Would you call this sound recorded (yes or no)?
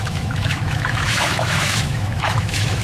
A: no